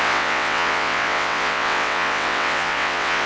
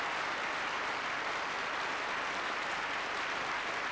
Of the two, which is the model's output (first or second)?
first